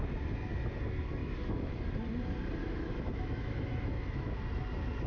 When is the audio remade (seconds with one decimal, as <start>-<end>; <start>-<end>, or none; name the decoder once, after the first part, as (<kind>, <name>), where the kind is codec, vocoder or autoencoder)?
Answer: 1.2-1.8 (autoencoder, DAC-VAE); 2.6-4.4